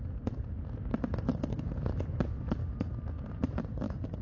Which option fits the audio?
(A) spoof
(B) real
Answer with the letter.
B